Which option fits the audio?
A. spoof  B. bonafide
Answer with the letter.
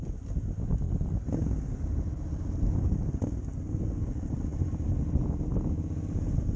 B